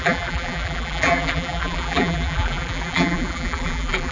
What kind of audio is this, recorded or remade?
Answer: remade